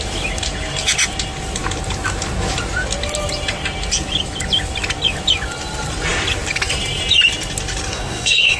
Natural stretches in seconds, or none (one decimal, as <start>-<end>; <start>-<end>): 0.0-7.9